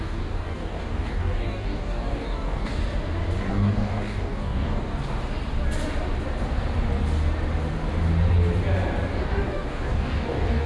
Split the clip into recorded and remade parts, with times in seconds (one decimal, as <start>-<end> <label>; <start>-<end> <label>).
0.0-2.8 remade; 2.8-3.5 recorded; 3.5-4.9 remade; 4.9-9.2 recorded; 9.2-10.7 remade